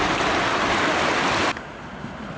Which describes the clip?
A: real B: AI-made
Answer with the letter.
A